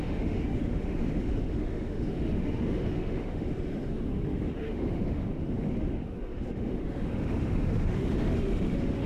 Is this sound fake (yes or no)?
yes